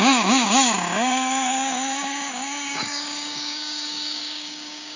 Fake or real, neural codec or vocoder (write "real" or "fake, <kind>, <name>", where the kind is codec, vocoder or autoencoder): fake, codec, DAC